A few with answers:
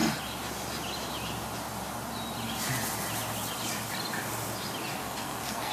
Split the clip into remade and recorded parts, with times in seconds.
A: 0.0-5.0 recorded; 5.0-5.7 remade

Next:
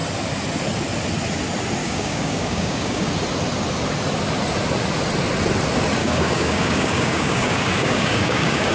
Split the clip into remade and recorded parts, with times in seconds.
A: 0.0-1.8 recorded; 1.8-3.1 remade; 3.1-6.0 recorded; 6.0-8.7 remade

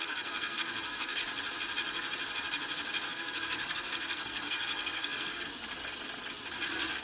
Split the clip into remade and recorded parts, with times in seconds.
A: 0.0-1.2 remade; 1.2-3.1 recorded; 3.1-5.5 remade; 5.5-7.0 recorded